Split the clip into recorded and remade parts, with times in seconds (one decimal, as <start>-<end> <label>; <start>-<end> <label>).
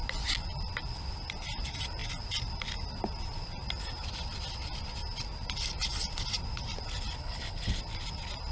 0.0-7.2 recorded; 7.2-7.8 remade; 7.8-8.5 recorded